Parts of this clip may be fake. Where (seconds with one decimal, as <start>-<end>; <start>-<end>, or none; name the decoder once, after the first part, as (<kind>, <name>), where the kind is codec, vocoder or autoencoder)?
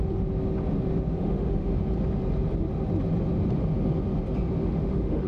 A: 1.2-1.8 (autoencoder, DAC-VAE); 4.6-5.3